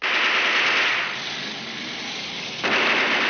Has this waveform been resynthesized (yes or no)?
no